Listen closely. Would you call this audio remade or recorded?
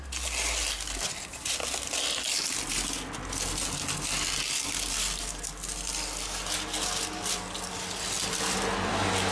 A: recorded